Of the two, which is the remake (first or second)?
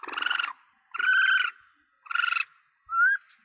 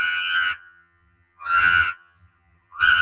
second